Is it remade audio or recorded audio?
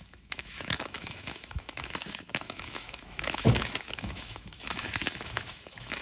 remade